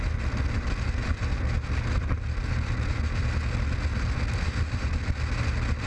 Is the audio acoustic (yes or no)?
yes